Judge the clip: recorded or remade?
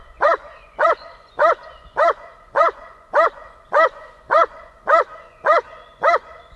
remade